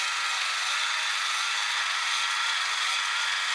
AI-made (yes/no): no